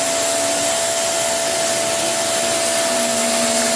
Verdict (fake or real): real